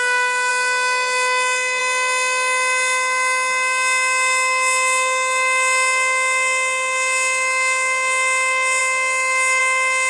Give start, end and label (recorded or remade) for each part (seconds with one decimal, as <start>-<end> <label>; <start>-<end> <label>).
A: 0.0-10.1 recorded

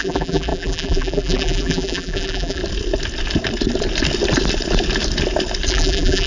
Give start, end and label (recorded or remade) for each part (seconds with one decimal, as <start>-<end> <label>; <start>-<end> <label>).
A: 0.0-2.6 remade; 2.6-5.7 recorded; 5.7-6.3 remade

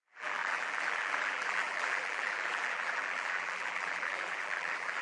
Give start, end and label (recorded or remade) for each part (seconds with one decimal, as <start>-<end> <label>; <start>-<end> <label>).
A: 0.0-5.0 remade

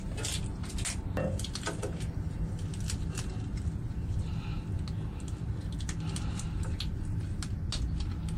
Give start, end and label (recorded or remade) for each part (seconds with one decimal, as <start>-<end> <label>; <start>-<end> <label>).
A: 0.0-8.4 recorded

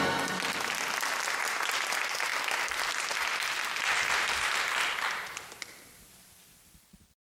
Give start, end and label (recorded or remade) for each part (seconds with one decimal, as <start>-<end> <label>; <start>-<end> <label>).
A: 0.0-7.4 recorded

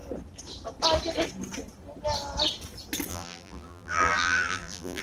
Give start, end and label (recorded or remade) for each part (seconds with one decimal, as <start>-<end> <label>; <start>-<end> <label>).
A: 0.0-3.1 recorded; 3.1-5.0 remade

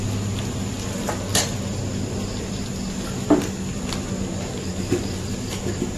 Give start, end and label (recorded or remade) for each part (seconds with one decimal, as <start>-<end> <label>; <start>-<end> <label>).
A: 0.0-6.0 recorded